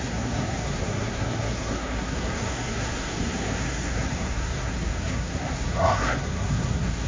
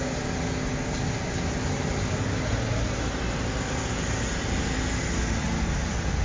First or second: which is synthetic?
first